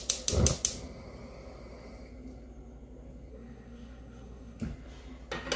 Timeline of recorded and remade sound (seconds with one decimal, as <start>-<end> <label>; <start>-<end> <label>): 0.0-3.3 recorded; 3.3-4.6 remade; 4.6-5.6 recorded